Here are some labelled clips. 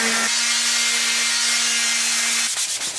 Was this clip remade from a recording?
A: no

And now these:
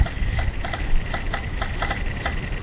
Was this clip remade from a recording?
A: no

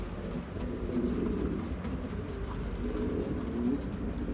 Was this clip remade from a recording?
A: no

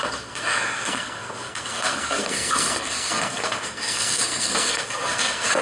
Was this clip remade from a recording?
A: yes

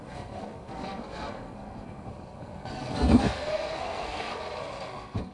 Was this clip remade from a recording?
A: yes